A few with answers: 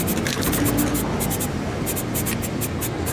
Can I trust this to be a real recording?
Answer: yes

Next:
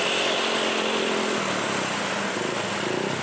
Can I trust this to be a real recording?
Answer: no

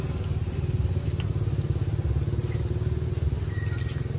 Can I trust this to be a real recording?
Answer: yes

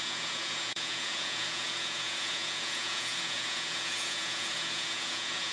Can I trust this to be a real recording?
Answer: no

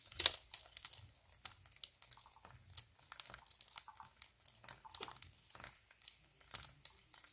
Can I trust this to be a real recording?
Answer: yes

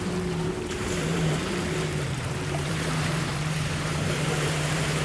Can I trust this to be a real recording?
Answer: no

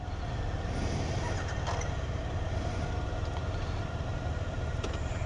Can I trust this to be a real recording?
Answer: yes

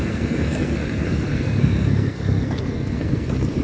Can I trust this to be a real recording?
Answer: no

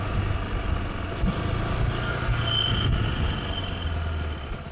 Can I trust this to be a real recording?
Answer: yes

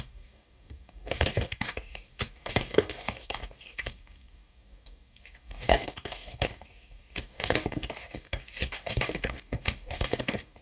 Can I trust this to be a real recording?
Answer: no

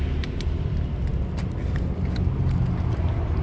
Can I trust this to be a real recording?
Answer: yes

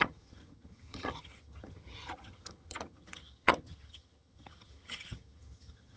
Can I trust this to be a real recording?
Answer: no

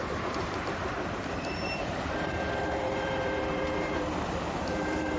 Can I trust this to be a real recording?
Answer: no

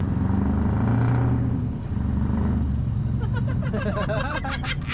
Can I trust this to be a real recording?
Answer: yes